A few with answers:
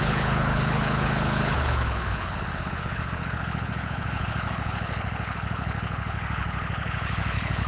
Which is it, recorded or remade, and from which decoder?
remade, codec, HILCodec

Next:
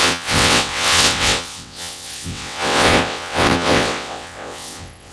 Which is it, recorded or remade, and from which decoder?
remade, vocoder, WaveNeXt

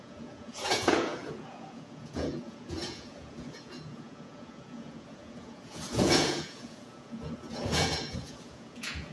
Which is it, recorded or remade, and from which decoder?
remade, vocoder, Vocos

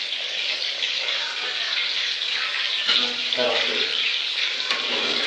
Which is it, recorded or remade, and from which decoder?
remade, codec, DAC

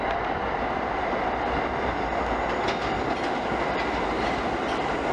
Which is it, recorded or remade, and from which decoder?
recorded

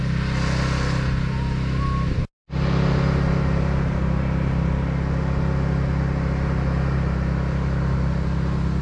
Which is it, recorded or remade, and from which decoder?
recorded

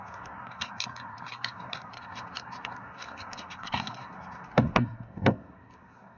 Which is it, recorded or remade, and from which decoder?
remade, codec, SNAC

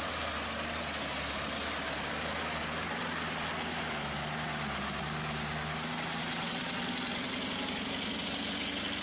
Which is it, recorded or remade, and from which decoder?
recorded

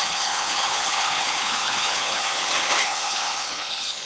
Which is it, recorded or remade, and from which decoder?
remade, codec, HILCodec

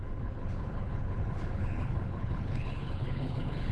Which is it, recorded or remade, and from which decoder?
remade, codec, HILCodec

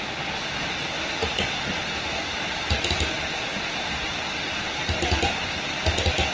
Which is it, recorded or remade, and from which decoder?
recorded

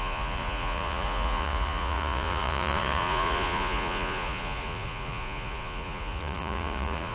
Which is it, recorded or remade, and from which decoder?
remade, vocoder, Vocos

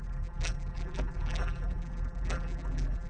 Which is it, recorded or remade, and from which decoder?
remade, vocoder, BigVGAN v2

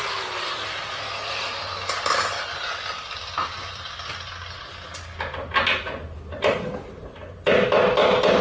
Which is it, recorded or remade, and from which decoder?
recorded